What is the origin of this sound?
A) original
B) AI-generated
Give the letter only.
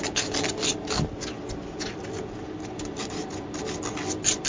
A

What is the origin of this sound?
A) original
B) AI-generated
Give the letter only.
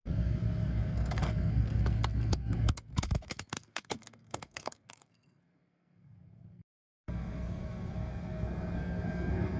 B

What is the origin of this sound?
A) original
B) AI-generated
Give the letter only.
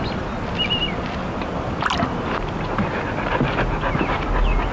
A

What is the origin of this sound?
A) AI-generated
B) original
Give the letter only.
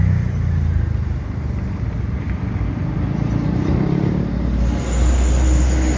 B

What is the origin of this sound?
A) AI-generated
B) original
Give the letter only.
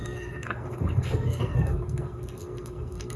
A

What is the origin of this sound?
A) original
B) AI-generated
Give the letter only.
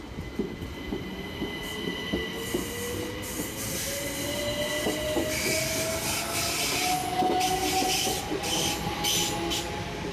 A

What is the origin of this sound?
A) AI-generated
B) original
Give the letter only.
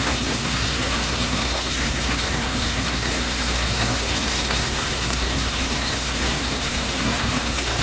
A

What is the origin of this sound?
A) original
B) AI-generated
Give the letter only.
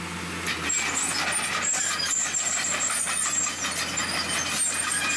A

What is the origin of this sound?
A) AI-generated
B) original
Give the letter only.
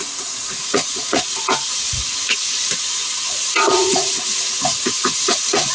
A